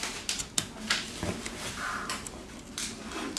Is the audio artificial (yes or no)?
no